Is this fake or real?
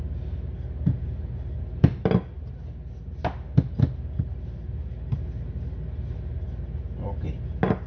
real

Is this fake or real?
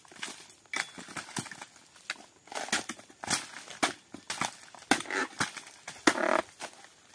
real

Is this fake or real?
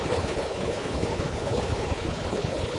fake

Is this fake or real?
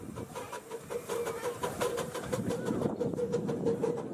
fake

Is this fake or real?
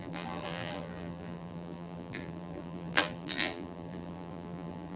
fake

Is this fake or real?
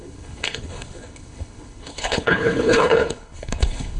fake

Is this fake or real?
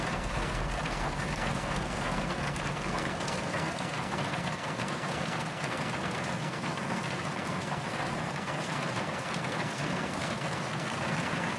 fake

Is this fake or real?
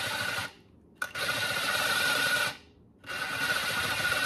real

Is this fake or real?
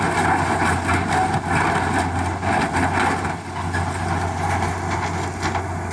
real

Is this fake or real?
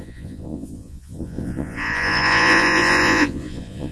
fake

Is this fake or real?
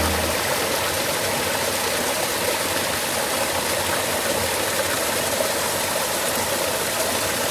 real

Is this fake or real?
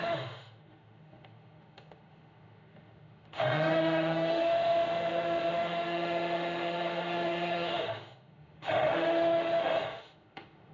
fake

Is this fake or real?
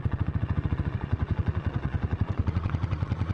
fake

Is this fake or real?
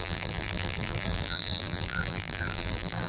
fake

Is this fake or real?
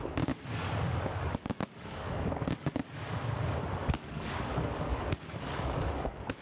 fake